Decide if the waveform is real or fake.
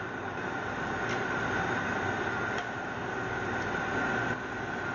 real